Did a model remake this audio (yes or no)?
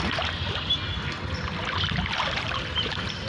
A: no